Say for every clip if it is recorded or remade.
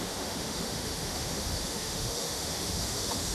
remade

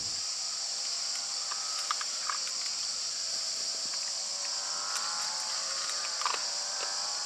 recorded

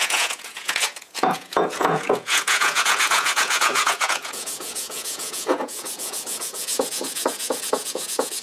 remade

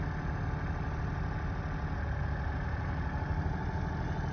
recorded